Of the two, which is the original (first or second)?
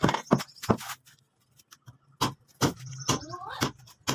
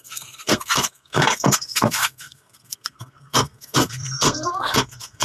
first